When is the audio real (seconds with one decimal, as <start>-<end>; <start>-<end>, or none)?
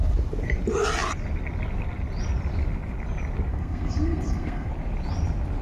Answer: 0.0-3.5; 4.7-5.6